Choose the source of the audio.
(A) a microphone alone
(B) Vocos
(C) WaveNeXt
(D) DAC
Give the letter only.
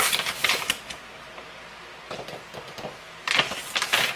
A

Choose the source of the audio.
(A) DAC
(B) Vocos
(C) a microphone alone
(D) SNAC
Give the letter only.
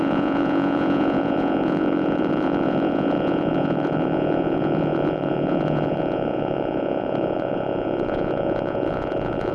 B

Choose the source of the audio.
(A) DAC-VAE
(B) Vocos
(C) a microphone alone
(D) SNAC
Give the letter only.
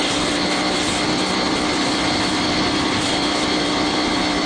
C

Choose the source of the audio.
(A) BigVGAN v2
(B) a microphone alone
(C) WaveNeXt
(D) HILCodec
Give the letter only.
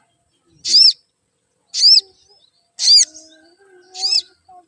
B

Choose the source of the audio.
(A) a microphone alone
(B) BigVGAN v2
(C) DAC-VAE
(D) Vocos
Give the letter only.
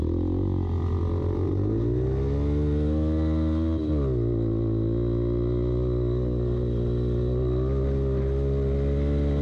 A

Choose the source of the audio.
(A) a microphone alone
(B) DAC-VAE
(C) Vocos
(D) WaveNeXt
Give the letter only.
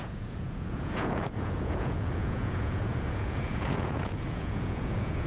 C